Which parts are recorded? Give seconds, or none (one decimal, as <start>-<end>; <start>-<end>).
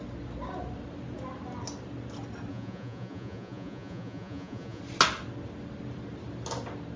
0.0-2.5; 4.8-7.0